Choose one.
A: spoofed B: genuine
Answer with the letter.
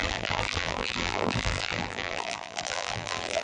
A